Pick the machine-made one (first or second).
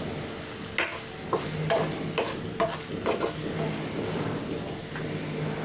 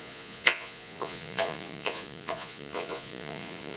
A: second